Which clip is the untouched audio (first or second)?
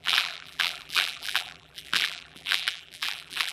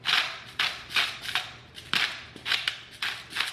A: second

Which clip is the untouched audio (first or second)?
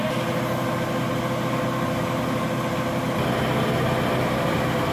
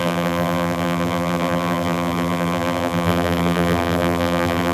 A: first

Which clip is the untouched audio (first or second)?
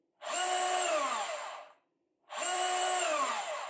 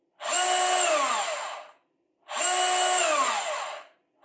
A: second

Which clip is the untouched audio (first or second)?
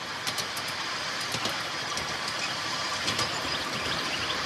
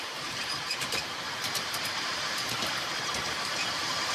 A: first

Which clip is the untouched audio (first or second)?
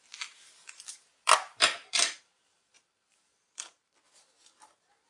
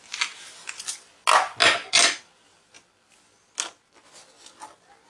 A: second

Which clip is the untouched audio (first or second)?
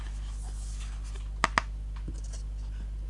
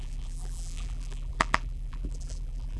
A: first